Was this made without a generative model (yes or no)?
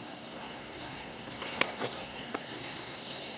no